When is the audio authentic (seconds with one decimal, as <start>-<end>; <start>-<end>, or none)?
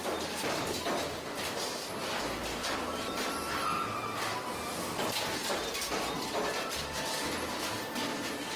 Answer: 0.0-8.6